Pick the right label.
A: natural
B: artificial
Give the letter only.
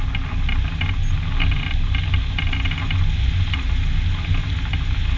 A